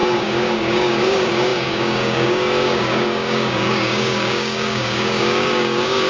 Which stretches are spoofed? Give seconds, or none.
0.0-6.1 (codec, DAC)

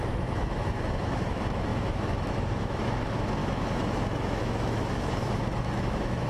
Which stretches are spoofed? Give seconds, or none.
0.0-6.3 (autoencoder, DAC-VAE)